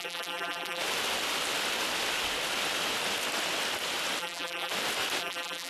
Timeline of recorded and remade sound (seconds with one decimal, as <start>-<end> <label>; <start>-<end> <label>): 0.0-0.8 remade; 0.8-4.2 recorded; 4.2-4.7 remade; 4.7-5.2 recorded; 5.2-5.7 remade